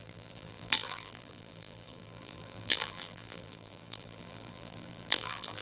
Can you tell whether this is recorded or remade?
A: remade